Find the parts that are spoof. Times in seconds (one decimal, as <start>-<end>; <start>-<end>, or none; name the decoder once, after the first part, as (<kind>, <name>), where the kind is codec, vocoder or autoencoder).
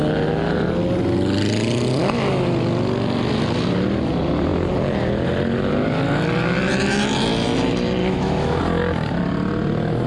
8.0-8.6 (autoencoder, DAC-VAE)